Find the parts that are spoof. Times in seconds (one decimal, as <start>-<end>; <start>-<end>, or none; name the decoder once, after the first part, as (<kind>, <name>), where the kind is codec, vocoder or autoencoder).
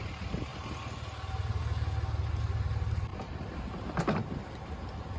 none